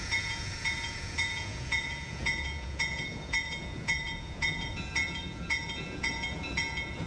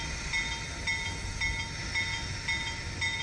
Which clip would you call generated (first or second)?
first